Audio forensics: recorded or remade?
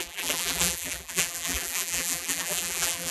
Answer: remade